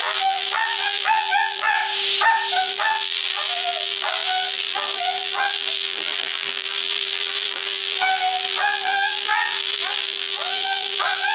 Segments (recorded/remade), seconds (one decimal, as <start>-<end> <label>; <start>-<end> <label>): 0.0-1.8 remade; 1.8-2.6 recorded; 2.6-11.3 remade